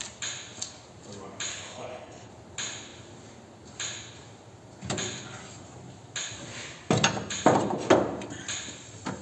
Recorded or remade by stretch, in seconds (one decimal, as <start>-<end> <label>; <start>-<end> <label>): 0.0-1.5 recorded; 1.5-2.3 remade; 2.3-9.2 recorded